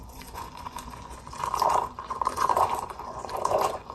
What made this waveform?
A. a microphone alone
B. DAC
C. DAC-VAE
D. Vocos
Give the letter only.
D